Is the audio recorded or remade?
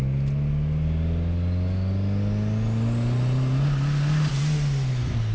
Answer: recorded